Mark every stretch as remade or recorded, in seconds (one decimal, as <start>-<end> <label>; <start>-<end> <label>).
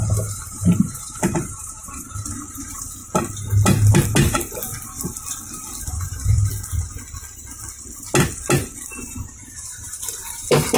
0.0-3.0 remade; 3.0-5.8 recorded; 5.8-6.5 remade; 6.5-9.0 recorded; 9.0-10.8 remade